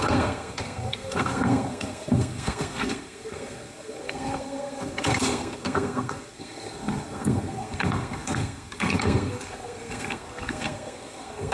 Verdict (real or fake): fake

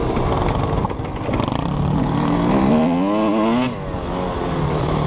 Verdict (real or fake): real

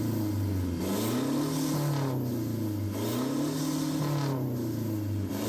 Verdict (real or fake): real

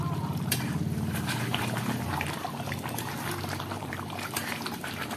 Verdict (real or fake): fake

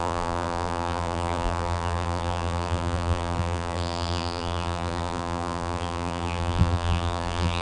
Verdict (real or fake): fake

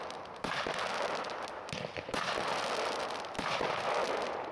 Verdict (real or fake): real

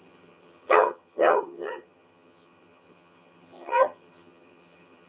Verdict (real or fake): fake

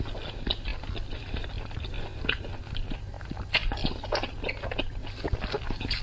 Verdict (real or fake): real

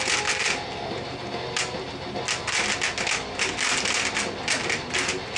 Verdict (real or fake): real